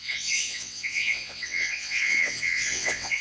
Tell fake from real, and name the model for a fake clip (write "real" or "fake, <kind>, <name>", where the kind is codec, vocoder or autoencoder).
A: fake, vocoder, WaveNeXt